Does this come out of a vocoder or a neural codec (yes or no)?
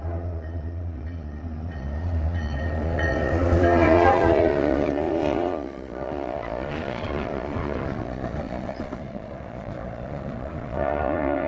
yes